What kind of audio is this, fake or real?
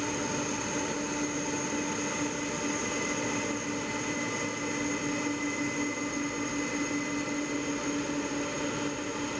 real